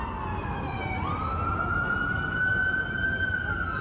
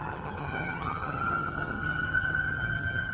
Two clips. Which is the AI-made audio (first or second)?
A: second